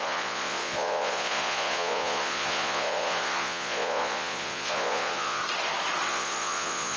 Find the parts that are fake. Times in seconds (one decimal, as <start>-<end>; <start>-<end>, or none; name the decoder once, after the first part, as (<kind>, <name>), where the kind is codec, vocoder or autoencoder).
0.0-5.4 (vocoder, Vocos); 6.1-7.0